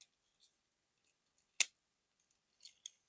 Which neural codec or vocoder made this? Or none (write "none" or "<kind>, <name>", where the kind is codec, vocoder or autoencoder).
none